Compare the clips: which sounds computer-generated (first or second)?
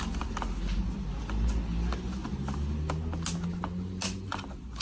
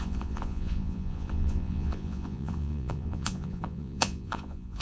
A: second